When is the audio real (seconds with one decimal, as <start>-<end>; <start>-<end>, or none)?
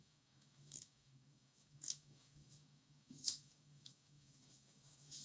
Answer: none